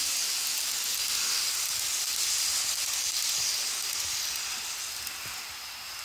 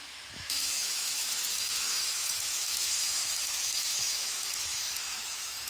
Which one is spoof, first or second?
second